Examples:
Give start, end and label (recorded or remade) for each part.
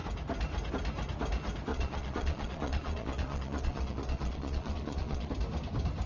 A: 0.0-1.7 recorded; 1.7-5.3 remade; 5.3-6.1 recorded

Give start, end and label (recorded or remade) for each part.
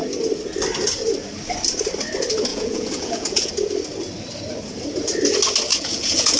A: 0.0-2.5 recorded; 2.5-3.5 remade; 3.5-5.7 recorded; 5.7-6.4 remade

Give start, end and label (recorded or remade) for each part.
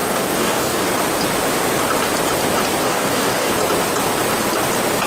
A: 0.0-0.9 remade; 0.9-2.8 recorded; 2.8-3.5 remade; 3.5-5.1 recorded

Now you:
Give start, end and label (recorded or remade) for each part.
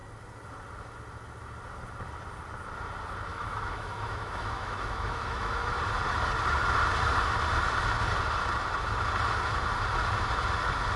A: 0.0-3.3 recorded; 3.3-5.8 remade; 5.8-11.0 recorded